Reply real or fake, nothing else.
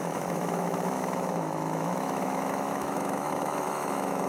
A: fake